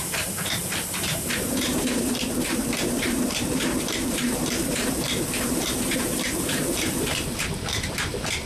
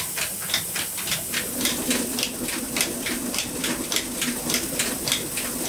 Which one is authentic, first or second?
second